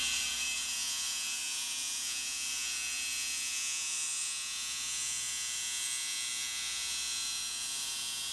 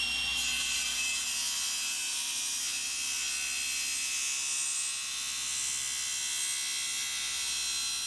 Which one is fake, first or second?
first